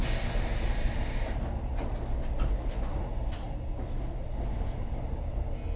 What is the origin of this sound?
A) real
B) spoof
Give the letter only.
A